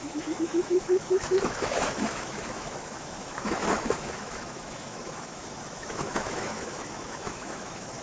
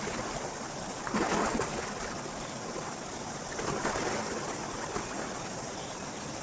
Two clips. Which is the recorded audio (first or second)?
second